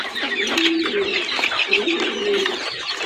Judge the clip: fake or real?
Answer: fake